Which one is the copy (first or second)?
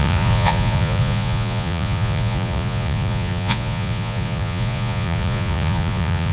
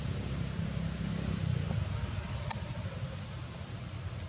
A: first